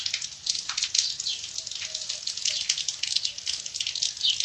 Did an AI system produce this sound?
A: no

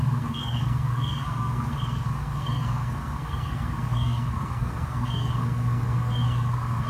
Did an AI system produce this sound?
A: yes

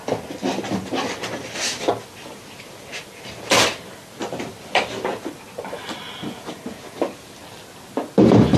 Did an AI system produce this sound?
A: no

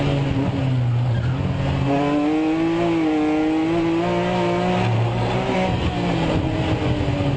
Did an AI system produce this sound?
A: no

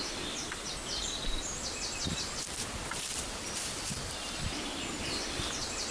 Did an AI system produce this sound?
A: no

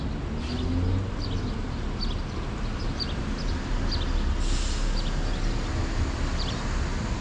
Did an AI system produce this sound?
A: no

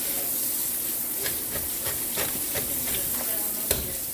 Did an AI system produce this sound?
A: no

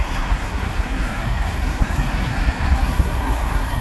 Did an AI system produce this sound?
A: yes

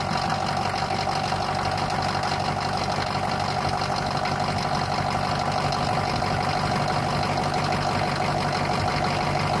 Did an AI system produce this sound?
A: no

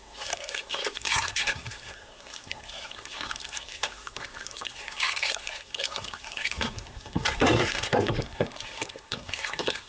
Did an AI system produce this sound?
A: yes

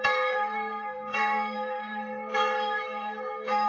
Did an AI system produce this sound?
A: yes